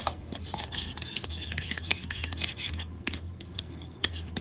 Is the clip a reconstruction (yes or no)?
yes